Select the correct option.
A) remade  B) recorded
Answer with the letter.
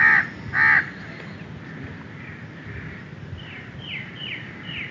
B